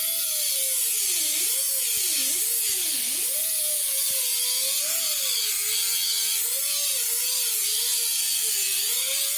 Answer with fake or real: real